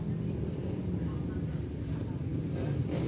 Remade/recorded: recorded